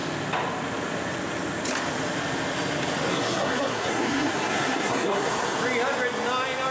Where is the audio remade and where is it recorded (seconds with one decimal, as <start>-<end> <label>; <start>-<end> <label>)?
0.0-3.1 recorded; 3.1-5.6 remade; 5.6-6.7 recorded

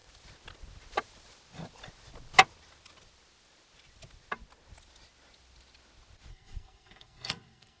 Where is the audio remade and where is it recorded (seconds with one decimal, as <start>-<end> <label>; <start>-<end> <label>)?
0.0-6.3 recorded; 6.3-7.8 remade